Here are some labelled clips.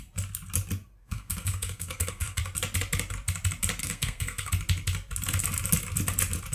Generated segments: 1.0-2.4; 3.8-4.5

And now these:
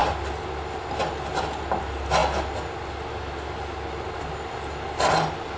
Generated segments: none